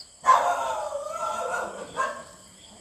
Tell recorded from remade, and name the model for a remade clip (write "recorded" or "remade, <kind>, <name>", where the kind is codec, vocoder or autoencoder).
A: recorded